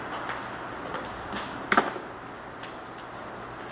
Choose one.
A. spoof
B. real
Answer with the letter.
B